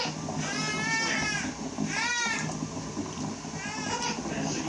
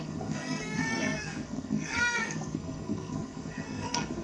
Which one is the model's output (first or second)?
second